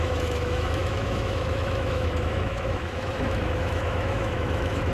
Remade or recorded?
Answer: remade